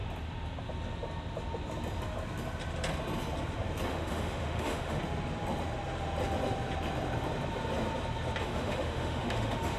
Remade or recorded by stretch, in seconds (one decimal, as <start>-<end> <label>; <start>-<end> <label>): 0.0-3.9 recorded; 3.9-5.0 remade; 5.0-8.4 recorded; 8.4-9.8 remade